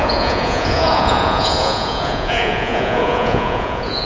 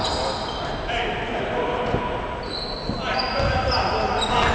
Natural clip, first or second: second